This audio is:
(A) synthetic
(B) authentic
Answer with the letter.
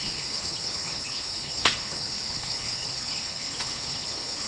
A